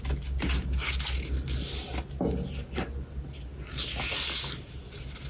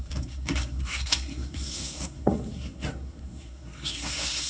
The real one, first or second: first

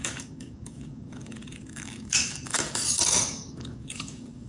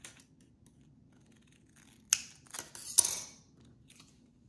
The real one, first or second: second